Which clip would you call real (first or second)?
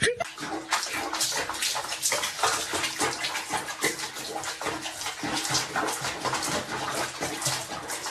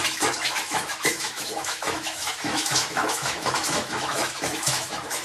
first